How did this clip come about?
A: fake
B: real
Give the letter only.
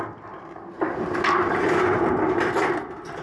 B